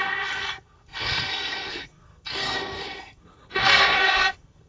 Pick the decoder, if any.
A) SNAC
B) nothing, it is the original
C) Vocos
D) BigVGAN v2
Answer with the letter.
A